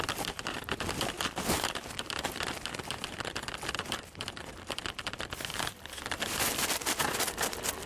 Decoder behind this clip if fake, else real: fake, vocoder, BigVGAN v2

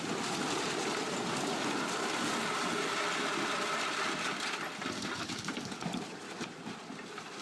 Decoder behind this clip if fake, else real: real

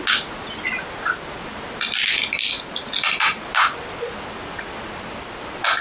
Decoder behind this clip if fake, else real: real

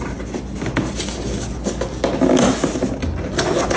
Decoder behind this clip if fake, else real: real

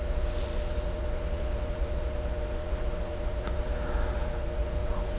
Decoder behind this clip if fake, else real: fake, vocoder, Vocos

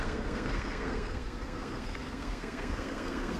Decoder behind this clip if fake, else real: fake, codec, SNAC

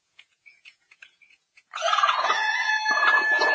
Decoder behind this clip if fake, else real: fake, vocoder, Vocos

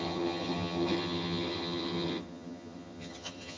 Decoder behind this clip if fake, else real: fake, vocoder, HiFi-GAN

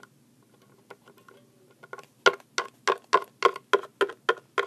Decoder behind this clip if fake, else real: real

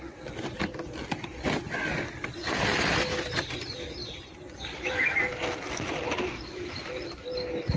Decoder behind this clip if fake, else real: real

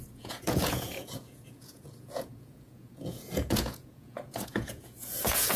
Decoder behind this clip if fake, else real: fake, vocoder, Vocos